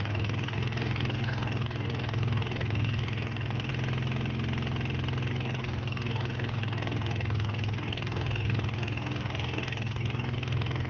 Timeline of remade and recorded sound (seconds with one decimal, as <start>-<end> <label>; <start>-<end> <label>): 0.0-3.7 remade; 3.7-5.3 recorded; 5.3-10.9 remade